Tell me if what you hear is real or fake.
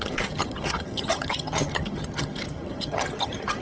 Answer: fake